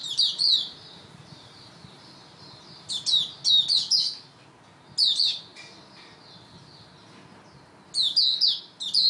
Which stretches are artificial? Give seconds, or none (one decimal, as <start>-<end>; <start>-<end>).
0.0-2.9